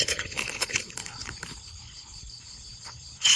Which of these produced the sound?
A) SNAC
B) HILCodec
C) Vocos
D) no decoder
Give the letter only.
B